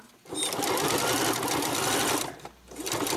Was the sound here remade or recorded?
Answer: recorded